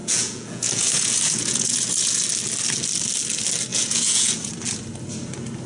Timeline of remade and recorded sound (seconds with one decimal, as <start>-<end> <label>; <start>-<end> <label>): 0.0-2.2 remade; 2.2-3.7 recorded; 3.7-4.5 remade; 4.5-5.7 recorded